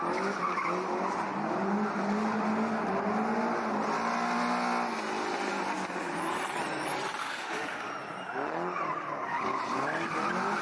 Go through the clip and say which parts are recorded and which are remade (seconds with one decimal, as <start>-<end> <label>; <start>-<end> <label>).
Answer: 0.0-7.2 recorded; 7.2-7.9 remade; 7.9-10.6 recorded